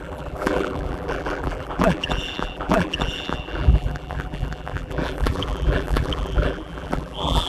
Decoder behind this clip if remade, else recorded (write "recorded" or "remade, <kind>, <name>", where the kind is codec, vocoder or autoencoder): remade, vocoder, BigVGAN v2